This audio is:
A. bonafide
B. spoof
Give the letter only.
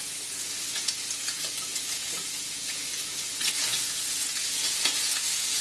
B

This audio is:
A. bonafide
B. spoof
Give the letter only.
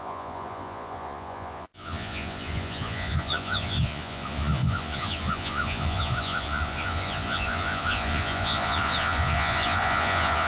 B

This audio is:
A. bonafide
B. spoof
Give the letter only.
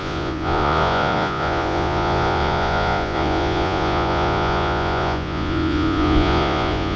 B